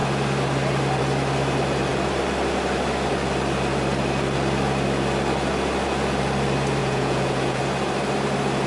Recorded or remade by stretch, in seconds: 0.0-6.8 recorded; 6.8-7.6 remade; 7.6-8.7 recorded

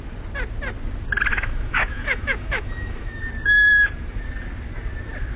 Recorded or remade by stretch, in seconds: 0.0-1.3 recorded; 1.3-3.2 remade; 3.2-5.4 recorded